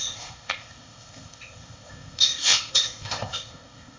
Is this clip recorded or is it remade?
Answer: remade